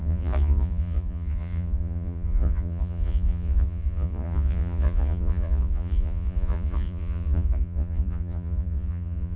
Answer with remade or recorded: remade